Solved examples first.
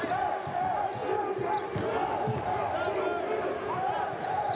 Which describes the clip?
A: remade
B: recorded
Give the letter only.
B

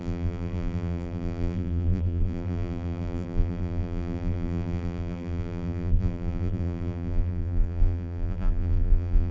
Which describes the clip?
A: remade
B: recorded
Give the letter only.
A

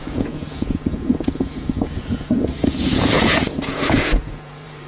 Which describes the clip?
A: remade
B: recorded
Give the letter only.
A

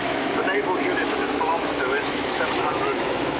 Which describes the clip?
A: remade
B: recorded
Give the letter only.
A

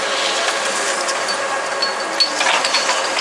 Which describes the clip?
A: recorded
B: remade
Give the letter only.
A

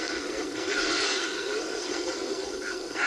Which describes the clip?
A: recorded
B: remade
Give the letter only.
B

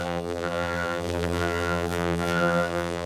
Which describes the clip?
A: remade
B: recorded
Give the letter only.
A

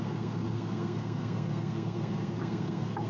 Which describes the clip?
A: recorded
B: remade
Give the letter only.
B